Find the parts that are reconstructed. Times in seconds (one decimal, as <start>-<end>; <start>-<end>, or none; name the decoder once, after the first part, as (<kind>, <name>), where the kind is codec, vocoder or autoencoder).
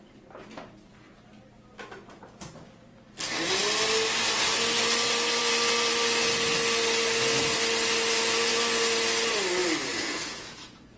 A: 9.9-11.0 (vocoder, Vocos)